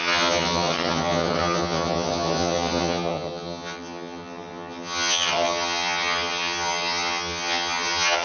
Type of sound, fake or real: fake